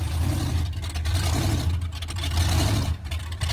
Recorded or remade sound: recorded